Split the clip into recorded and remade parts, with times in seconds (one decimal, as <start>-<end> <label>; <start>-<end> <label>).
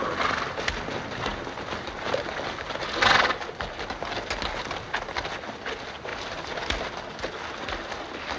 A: 0.0-8.4 recorded